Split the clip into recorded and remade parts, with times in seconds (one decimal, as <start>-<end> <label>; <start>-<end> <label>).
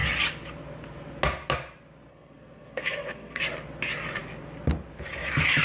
0.0-2.1 recorded; 2.1-3.4 remade; 3.4-5.6 recorded